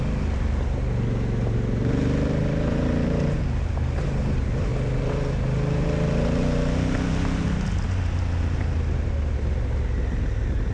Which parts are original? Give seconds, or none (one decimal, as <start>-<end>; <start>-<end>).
0.0-10.7